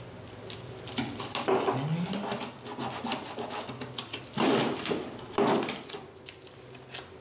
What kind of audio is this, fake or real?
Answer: real